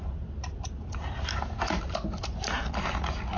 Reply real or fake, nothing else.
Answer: real